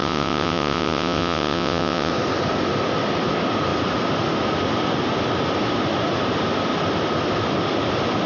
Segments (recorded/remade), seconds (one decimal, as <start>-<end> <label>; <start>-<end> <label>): 0.0-2.1 remade; 2.1-8.3 recorded